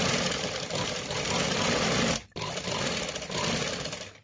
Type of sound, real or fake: fake